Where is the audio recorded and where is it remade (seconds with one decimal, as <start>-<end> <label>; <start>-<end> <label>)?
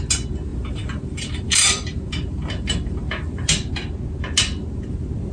0.0-0.5 recorded; 0.5-3.7 remade; 3.7-5.3 recorded